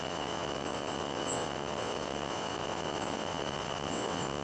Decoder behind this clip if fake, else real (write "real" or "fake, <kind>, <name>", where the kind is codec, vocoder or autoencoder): fake, vocoder, WaveNeXt